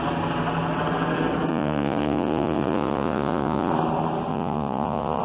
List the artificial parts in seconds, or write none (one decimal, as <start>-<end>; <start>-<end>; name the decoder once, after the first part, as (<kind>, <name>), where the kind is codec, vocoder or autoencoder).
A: 1.5-3.7 (vocoder, Vocos); 4.3-5.2